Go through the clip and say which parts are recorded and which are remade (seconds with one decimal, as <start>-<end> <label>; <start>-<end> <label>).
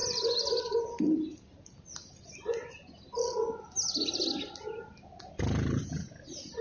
0.0-6.6 recorded